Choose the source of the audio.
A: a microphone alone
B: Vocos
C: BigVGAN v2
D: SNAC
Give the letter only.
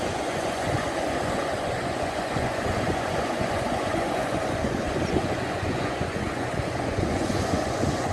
B